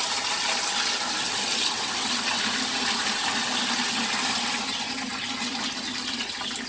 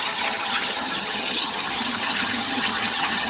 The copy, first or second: second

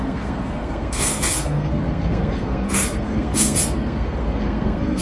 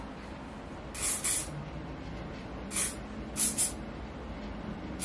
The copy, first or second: first